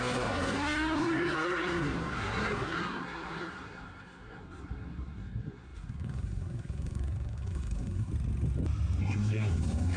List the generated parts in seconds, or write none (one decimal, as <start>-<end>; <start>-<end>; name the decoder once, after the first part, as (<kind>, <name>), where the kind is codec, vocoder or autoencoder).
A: 0.0-8.1 (codec, SNAC); 9.0-10.0